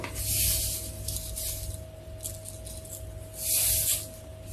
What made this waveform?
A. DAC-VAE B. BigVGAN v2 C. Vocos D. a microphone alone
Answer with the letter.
D